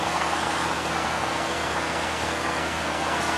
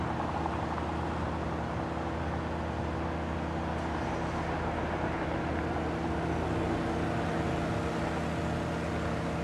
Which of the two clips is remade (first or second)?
first